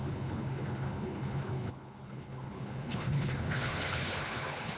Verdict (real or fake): fake